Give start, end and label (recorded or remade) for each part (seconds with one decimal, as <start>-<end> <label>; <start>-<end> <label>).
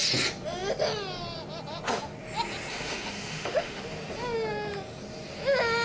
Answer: 0.0-2.7 recorded; 2.7-3.8 remade; 3.8-5.8 recorded